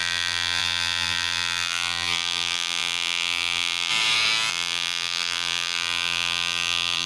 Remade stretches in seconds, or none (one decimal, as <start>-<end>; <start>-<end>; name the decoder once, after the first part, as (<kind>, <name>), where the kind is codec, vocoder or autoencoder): 0.0-3.9 (vocoder, BigVGAN v2); 4.5-7.1